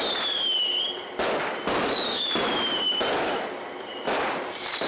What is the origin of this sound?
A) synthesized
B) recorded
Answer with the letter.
B